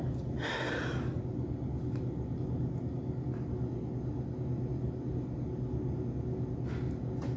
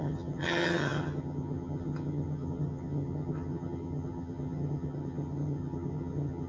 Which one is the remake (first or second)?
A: second